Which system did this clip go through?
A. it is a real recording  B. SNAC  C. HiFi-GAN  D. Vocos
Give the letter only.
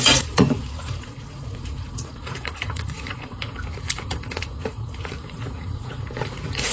D